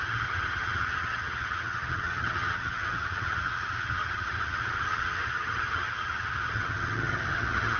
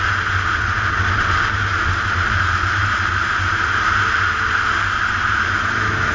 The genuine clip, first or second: second